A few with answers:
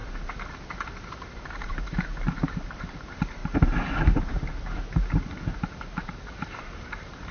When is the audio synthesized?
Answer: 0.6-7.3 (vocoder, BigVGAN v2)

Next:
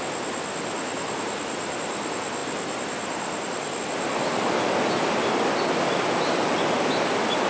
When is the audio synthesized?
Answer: none

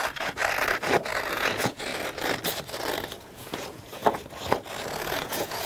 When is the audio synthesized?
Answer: 0.0-0.4 (vocoder, Vocos); 1.3-1.9; 3.2-4.0; 5.0-5.7

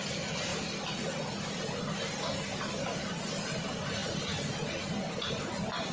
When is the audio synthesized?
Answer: 4.0-5.1 (vocoder, BigVGAN v2)

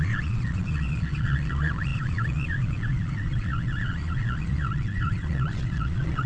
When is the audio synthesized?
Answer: 0.0-6.3 (vocoder, Vocos)

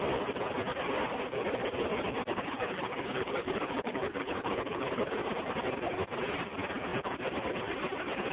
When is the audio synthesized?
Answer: 2.3-5.1 (codec, HILCodec)

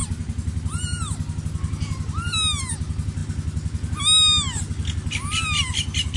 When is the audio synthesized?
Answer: none